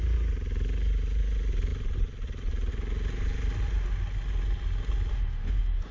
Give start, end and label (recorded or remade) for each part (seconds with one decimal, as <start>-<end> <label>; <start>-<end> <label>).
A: 0.0-5.1 recorded; 5.1-5.9 remade